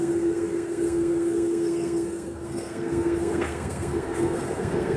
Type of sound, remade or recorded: remade